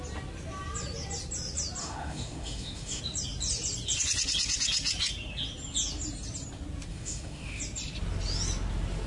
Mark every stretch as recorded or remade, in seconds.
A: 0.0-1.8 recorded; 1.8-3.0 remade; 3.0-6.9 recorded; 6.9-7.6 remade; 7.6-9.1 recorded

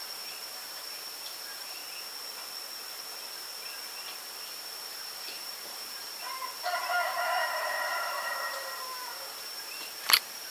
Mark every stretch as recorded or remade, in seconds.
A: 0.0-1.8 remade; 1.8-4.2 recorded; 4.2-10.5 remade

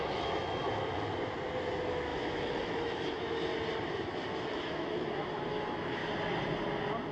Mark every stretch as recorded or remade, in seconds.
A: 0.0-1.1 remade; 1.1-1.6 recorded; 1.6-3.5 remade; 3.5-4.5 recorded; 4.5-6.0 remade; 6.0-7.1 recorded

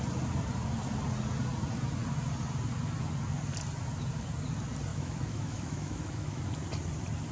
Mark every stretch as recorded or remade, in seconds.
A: 0.0-4.9 recorded; 4.9-6.4 remade; 6.4-7.3 recorded

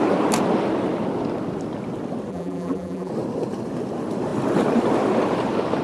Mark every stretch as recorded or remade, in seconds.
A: 0.0-2.3 recorded; 2.3-3.1 remade; 3.1-5.8 recorded

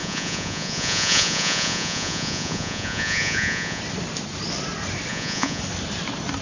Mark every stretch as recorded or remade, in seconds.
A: 0.0-3.8 remade; 3.8-5.1 recorded; 5.1-5.6 remade; 5.6-6.4 recorded

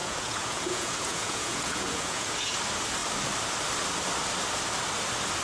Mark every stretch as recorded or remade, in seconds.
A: 0.0-2.6 remade; 2.6-5.4 recorded

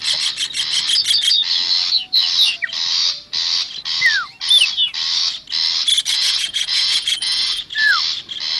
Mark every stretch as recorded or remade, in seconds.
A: 0.0-6.1 recorded; 6.1-7.9 remade; 7.9-8.6 recorded